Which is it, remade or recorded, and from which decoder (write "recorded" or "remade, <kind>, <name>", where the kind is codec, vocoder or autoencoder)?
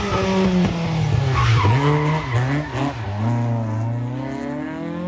recorded